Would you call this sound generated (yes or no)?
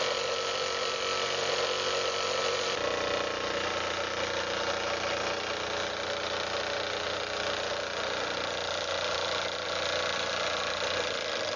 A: no